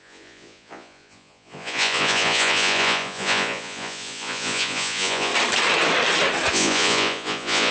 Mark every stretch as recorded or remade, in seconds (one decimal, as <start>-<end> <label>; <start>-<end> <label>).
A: 0.0-5.3 remade; 5.3-6.5 recorded; 6.5-7.7 remade